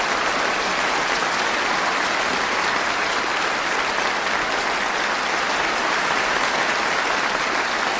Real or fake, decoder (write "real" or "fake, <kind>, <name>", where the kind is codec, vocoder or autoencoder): real